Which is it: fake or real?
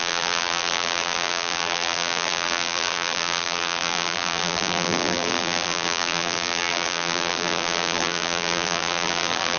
fake